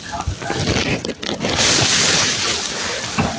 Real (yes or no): yes